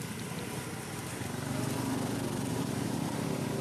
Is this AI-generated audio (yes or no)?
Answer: no